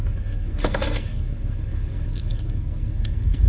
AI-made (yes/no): yes